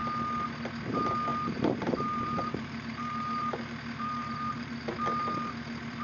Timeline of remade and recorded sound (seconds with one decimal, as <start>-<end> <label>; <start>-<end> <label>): 0.0-1.3 recorded; 1.3-4.9 remade; 4.9-6.0 recorded

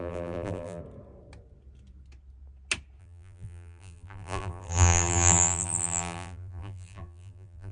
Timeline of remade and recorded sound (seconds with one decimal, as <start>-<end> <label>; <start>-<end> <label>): 0.0-0.8 remade; 0.8-3.0 recorded; 3.0-7.7 remade

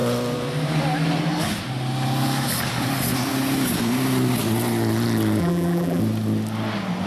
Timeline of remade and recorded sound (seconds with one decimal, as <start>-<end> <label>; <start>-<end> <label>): 0.0-5.4 recorded; 5.4-6.0 remade; 6.0-7.1 recorded